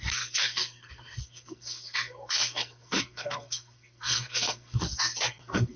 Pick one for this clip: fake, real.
fake